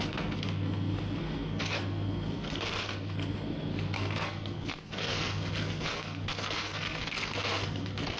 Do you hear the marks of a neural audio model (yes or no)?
yes